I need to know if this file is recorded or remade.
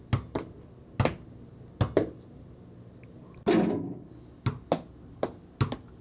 recorded